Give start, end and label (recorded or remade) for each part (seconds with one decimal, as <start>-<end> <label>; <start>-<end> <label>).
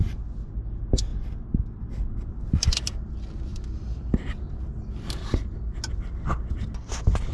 0.0-7.3 recorded